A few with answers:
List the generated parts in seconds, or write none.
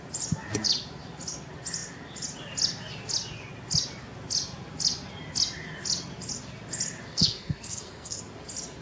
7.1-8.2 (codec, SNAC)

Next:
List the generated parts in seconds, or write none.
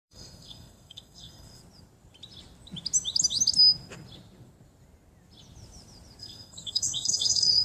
0.0-1.6 (codec, SNAC); 6.2-7.6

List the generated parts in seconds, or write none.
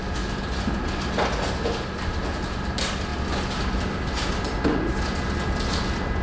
none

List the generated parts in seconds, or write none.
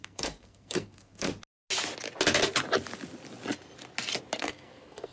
0.0-1.3 (codec, SNAC); 4.4-5.1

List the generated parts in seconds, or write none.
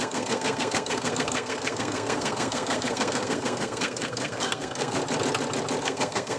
0.0-5.0 (codec, SNAC); 5.8-6.4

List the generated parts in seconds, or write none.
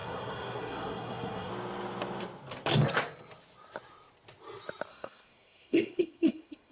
0.0-1.5 (codec, SNAC); 4.9-6.7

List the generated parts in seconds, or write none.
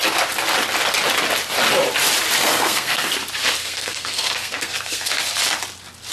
2.4-3.1 (codec, SNAC); 3.6-5.1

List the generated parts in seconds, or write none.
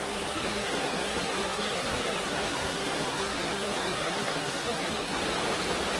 0.0-5.2 (codec, SNAC)